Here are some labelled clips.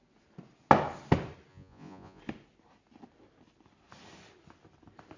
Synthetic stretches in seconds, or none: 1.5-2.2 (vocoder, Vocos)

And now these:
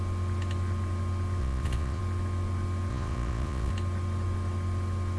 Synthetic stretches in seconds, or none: 1.4-2.0 (vocoder, Vocos); 2.9-3.7

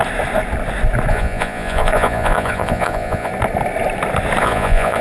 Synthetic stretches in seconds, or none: 1.1-3.3 (vocoder, Vocos); 4.4-5.0

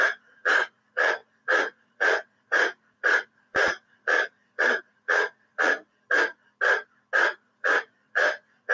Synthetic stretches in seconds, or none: 0.0-5.8 (vocoder, Vocos); 7.2-8.7

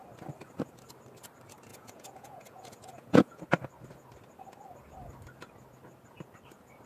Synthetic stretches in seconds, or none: 1.7-3.4 (vocoder, Vocos)

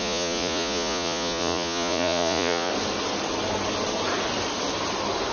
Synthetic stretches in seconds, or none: 0.0-2.7 (vocoder, Vocos)